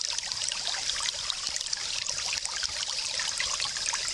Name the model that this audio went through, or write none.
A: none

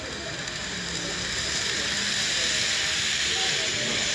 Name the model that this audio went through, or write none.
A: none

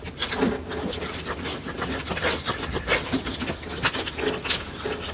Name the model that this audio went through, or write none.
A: none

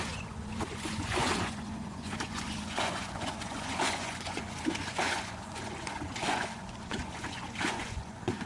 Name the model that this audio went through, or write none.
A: vocoder, Vocos